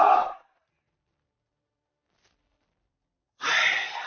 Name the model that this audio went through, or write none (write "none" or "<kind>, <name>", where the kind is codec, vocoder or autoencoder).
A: none